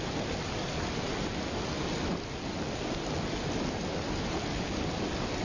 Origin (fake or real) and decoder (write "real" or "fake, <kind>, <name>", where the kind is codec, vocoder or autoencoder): real